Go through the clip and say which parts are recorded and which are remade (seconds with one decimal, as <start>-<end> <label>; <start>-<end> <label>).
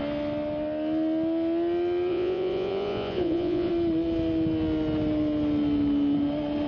0.0-2.1 recorded; 2.1-3.7 remade; 3.7-6.7 recorded